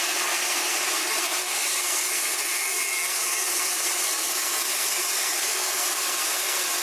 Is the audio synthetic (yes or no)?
yes